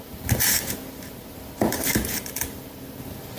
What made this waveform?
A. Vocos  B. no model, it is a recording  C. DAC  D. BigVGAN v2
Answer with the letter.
D